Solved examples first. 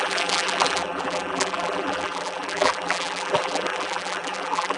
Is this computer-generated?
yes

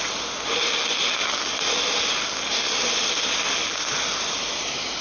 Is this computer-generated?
no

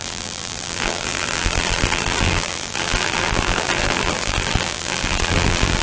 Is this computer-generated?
yes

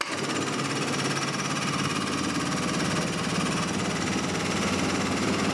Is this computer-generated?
no